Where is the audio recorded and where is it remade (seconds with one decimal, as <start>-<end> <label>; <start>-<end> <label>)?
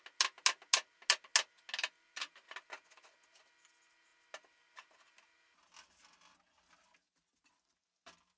0.0-8.4 recorded